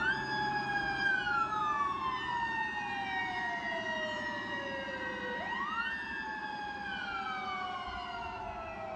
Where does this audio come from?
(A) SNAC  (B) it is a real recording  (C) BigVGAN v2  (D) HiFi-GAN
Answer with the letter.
B